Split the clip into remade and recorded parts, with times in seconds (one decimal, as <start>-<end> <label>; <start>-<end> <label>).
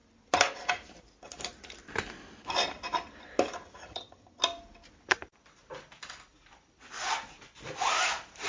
0.0-3.8 recorded; 3.8-4.4 remade; 4.4-8.5 recorded